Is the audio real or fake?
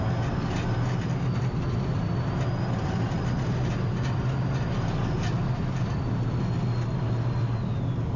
real